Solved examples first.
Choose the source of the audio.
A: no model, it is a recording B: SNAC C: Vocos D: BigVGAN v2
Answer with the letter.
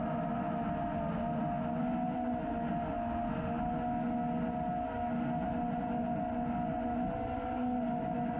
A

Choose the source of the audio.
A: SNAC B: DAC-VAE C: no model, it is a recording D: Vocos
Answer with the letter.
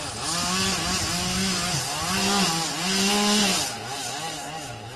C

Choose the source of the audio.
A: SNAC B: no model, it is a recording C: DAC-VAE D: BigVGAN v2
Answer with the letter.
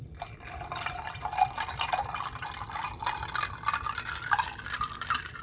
B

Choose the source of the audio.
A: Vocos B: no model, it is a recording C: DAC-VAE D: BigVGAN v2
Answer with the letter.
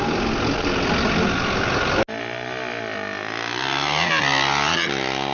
B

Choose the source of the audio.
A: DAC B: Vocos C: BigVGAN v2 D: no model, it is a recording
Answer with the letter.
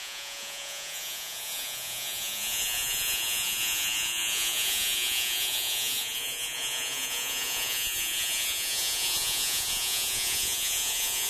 B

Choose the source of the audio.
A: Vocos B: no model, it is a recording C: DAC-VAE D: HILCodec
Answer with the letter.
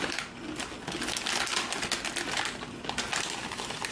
B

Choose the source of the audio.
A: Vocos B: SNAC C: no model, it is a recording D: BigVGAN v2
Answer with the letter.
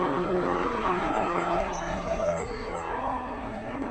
B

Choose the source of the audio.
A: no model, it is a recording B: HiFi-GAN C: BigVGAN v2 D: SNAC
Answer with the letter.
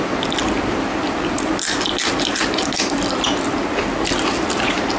A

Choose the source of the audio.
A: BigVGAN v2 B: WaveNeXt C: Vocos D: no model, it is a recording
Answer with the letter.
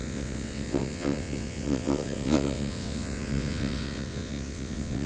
B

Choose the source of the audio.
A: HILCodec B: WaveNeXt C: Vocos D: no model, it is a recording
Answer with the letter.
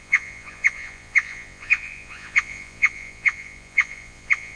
C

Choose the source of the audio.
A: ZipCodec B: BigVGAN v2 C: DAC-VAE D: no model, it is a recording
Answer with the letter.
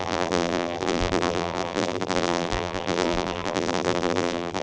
B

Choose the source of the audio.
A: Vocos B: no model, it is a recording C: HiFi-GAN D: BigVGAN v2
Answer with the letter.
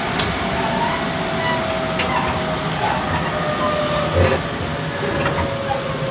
B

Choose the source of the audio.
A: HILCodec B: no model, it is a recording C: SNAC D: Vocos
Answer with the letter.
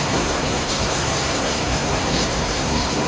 C